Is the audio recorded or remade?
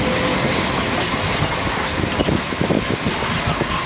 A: recorded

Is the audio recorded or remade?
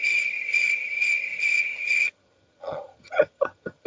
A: remade